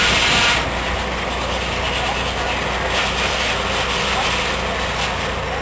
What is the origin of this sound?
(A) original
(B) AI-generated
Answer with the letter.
A